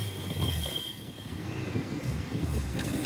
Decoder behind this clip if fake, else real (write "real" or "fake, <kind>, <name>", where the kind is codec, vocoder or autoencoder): fake, codec, SNAC